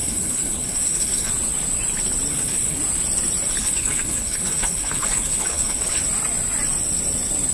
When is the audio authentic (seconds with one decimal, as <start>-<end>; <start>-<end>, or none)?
1.3-2.3; 2.8-3.6; 6.0-7.5